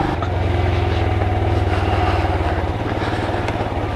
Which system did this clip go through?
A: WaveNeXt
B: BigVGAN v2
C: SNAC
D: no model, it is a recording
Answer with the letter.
D